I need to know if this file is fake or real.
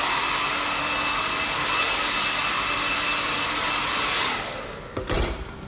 real